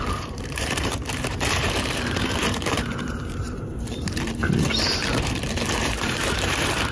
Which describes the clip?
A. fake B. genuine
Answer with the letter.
A